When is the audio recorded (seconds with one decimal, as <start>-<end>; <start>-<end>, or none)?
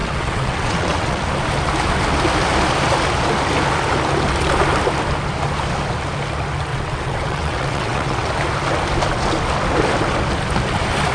1.2-6.7; 8.3-11.1